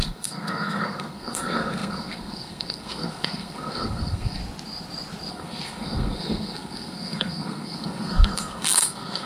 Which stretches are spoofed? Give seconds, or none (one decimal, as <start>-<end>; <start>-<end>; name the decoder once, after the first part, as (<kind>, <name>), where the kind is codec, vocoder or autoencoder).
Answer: 0.0-4.4 (codec, SNAC); 5.3-9.3

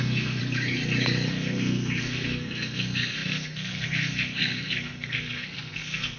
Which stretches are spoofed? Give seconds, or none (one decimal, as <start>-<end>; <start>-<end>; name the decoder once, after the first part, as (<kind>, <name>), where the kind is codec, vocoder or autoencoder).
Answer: 0.0-0.4 (codec, SNAC); 1.3-6.2

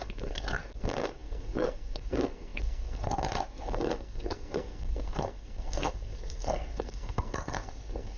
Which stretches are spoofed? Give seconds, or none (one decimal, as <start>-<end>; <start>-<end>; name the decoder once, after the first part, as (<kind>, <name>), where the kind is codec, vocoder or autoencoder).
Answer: 0.0-8.2 (codec, SNAC)

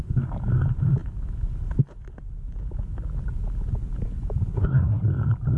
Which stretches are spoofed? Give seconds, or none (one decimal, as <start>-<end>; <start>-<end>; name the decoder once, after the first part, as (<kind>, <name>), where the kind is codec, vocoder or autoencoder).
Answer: 4.5-5.0 (codec, SNAC)

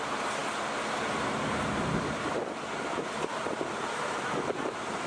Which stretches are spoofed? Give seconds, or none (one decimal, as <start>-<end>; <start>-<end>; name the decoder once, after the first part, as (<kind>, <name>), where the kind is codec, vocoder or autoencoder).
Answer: none

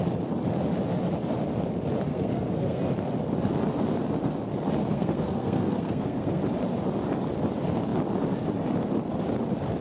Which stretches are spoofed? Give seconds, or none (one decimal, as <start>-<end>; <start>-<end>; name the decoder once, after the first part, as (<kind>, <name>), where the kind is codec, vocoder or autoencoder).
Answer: 2.1-2.8 (codec, SNAC); 4.9-6.4

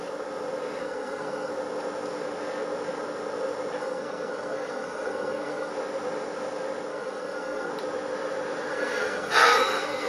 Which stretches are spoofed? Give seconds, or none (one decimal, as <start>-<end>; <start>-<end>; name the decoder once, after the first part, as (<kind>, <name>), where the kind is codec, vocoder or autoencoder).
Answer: 0.8-1.5 (codec, SNAC); 3.8-5.7; 6.9-7.7; 8.7-10.1

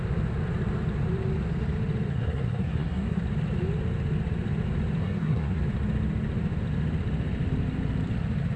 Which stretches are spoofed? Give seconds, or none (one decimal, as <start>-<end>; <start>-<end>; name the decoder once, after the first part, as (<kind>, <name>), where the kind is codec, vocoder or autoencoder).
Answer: 2.1-3.2 (codec, SNAC); 5.0-5.6